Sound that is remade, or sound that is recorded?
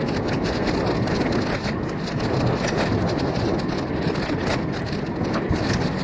recorded